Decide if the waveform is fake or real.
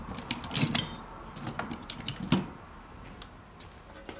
real